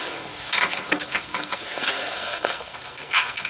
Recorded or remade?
remade